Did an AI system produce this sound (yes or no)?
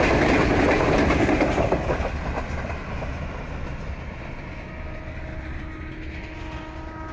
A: no